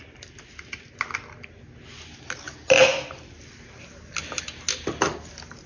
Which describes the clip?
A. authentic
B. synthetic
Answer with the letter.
A